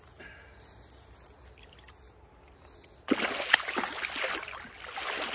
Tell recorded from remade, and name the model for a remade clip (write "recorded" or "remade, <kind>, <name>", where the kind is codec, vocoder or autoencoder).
recorded